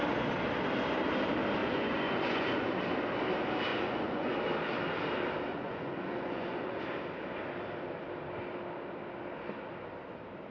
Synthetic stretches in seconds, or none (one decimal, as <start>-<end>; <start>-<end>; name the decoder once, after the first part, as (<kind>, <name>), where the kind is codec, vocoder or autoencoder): 1.6-2.8 (vocoder, Vocos); 3.7-4.3; 5.5-6.8